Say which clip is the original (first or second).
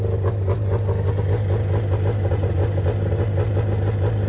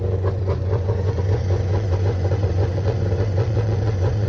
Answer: first